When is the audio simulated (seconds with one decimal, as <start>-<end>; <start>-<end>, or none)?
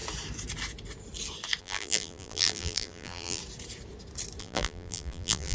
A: 1.6-3.4; 4.4-5.5